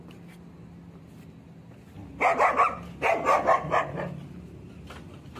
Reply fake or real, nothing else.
real